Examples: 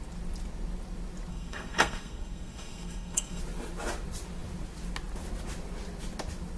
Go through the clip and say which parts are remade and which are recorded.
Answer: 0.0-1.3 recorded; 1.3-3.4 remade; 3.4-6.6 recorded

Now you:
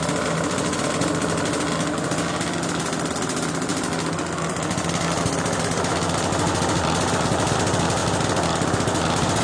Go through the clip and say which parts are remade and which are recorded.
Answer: 0.0-9.4 recorded

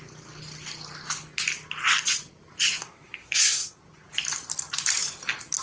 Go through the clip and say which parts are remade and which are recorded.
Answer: 0.0-2.8 recorded; 2.8-3.8 remade; 3.8-5.6 recorded

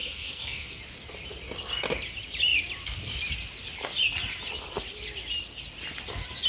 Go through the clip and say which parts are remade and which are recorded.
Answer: 0.0-0.8 remade; 0.8-6.5 recorded

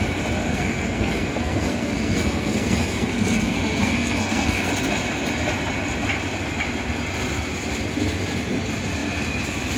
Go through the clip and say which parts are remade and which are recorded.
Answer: 0.0-0.5 recorded; 0.5-4.7 remade; 4.7-9.8 recorded

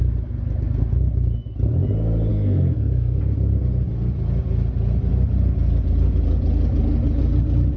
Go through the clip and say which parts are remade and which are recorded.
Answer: 0.0-2.3 recorded; 2.3-3.2 remade; 3.2-7.8 recorded

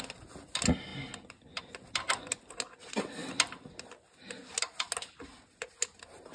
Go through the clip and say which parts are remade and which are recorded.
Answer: 0.0-6.3 recorded

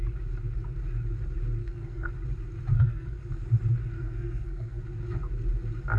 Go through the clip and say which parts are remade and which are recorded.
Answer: 0.0-1.6 recorded; 1.6-2.1 remade; 2.1-2.7 recorded; 2.7-3.3 remade; 3.3-3.8 recorded; 3.8-4.8 remade; 4.8-6.0 recorded